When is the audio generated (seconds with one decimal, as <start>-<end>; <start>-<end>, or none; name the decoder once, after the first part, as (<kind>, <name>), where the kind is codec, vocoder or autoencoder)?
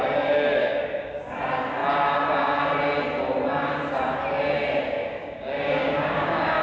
0.6-1.4 (codec, DAC); 5.0-6.6